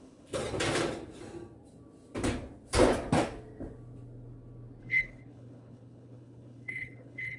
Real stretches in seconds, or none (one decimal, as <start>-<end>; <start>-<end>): 0.4-4.8